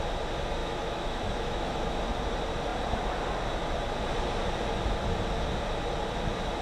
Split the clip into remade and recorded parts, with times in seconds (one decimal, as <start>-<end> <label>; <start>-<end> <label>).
0.0-0.6 recorded; 0.6-2.0 remade; 2.0-6.6 recorded